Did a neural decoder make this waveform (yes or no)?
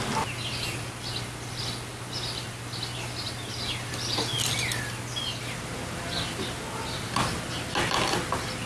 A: no